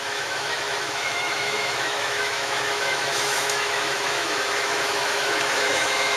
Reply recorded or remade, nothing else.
remade